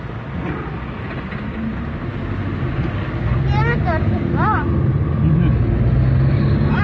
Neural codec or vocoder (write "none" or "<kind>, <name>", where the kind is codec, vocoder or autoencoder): none